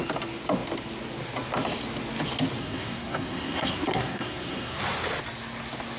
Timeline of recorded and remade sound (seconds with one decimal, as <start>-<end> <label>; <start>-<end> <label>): 0.0-2.6 recorded; 2.6-4.8 remade; 4.8-6.0 recorded

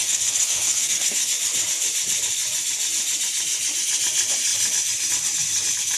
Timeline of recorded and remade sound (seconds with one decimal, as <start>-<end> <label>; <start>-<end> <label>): 0.0-1.4 remade; 1.4-6.0 recorded